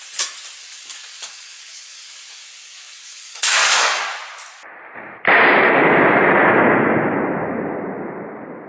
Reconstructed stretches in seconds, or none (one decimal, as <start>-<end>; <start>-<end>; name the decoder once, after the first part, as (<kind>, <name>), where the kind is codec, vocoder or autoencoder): 0.6-4.1 (codec, DAC)